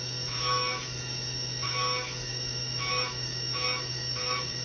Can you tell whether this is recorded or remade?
remade